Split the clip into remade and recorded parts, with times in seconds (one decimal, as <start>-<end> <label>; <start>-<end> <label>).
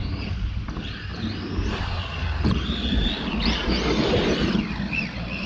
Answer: 0.0-5.5 recorded